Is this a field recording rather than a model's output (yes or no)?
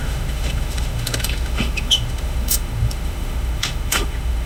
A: no